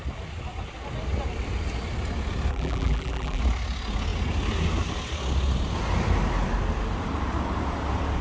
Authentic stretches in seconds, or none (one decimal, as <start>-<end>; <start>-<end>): 0.0-2.5; 3.4-8.2